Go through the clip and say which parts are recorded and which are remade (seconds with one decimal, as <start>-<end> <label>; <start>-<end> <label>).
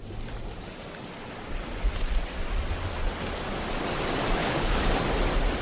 0.0-4.4 recorded; 4.4-4.9 remade; 4.9-5.6 recorded